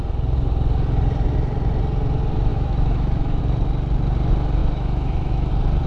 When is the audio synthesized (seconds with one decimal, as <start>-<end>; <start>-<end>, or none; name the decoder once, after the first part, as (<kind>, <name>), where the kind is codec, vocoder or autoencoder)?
2.5-3.4 (autoencoder, DAC-VAE); 4.6-5.5